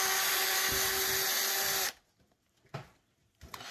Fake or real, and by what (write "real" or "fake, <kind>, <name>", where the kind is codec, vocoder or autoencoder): real